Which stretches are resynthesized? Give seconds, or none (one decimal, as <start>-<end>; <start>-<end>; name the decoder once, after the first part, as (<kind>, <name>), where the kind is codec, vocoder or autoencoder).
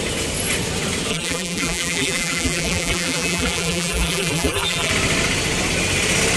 1.1-4.9 (vocoder, BigVGAN v2)